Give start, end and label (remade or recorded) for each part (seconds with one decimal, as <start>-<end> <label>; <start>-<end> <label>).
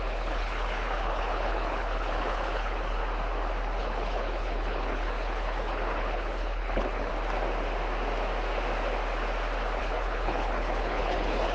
0.0-3.0 remade; 3.0-3.8 recorded; 3.8-7.1 remade; 7.1-9.8 recorded; 9.8-11.5 remade